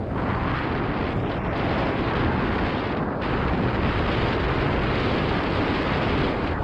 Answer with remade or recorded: recorded